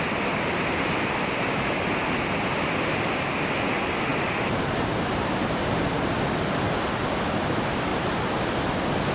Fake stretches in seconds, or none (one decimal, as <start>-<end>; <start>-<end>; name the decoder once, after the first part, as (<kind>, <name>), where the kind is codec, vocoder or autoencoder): 4.1-6.1 (vocoder, BigVGAN v2)